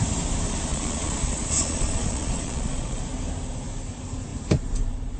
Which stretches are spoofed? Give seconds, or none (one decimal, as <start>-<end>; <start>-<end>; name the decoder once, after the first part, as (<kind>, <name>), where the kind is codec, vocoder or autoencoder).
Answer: 0.7-3.0 (vocoder, Vocos)

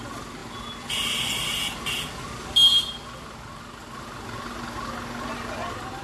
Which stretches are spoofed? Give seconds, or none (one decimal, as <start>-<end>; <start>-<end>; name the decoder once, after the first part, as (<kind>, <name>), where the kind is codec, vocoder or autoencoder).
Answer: none

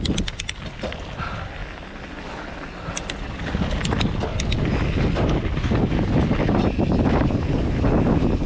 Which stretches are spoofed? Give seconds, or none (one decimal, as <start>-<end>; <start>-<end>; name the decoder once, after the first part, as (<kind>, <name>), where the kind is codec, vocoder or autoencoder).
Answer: none

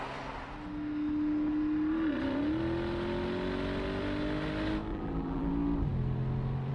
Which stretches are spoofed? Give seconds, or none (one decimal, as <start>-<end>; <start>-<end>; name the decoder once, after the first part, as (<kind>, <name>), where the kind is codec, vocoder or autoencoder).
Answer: 4.9-5.5 (vocoder, BigVGAN v2)

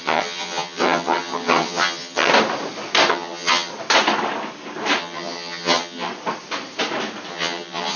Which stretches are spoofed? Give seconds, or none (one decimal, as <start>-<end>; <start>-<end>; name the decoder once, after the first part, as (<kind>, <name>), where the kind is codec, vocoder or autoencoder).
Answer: 0.0-2.3 (vocoder, HiFi-GAN); 3.1-3.7; 5.0-6.1; 7.3-8.0